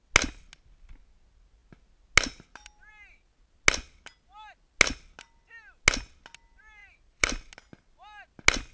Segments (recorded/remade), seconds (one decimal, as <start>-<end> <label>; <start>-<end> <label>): 0.0-6.8 recorded; 6.8-7.5 remade; 7.5-8.7 recorded